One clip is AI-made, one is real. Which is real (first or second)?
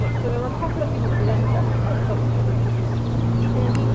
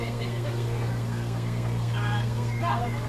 first